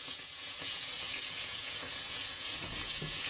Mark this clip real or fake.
fake